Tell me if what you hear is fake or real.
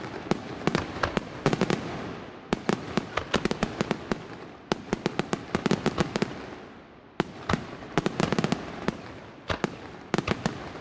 real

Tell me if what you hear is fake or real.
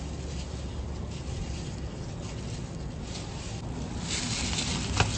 real